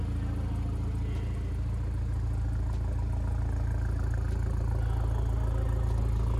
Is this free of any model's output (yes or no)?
yes